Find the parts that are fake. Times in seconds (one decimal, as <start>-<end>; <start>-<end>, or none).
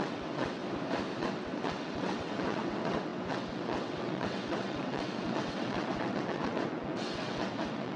0.0-0.6; 1.2-8.0